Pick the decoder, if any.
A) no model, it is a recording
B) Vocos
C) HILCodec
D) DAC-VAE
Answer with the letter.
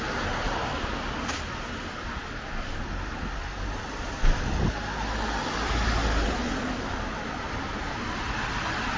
A